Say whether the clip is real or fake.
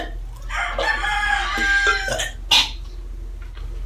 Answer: real